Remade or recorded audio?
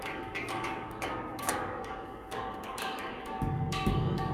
remade